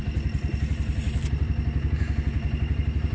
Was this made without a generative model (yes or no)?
yes